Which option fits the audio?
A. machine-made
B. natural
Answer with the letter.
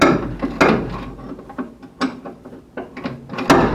B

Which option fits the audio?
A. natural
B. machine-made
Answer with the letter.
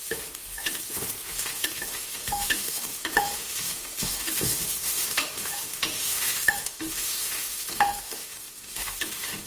B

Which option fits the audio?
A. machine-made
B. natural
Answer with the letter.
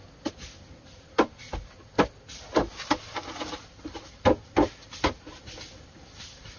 B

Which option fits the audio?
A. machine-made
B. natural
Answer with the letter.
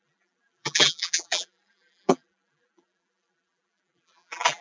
A